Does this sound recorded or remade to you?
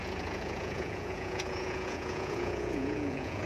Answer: remade